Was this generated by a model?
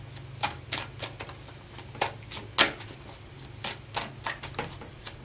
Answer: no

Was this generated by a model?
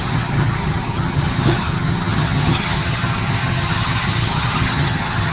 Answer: yes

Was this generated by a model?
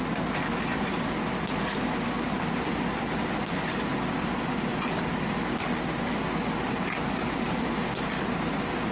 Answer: no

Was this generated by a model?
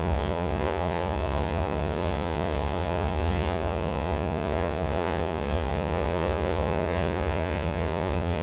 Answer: yes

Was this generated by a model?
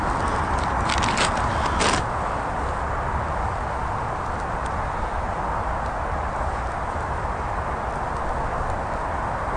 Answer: no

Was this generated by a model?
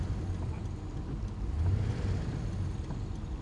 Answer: no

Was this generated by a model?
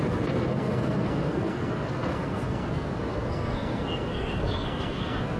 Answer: yes